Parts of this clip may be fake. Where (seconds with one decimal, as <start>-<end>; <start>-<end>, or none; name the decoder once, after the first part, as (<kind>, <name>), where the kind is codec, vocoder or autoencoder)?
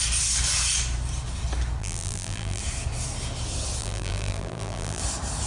1.8-2.6 (vocoder, BigVGAN v2); 3.8-5.0